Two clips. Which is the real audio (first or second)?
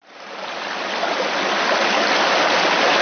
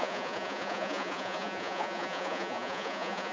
first